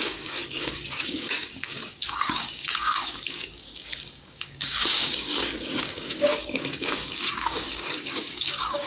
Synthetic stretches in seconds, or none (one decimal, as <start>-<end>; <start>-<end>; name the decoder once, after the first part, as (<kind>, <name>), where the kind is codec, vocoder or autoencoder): 0.0-8.9 (codec, DAC)